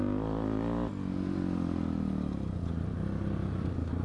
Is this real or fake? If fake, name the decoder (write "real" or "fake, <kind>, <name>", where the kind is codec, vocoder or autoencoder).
real